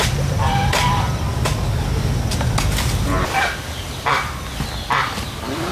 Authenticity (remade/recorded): recorded